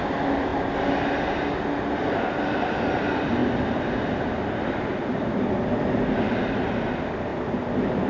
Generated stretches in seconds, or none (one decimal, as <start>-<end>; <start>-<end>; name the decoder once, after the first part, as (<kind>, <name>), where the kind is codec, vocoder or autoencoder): 0.0-0.5 (vocoder, BigVGAN v2); 2.4-8.1